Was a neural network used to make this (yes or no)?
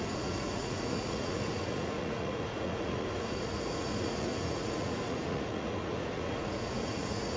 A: yes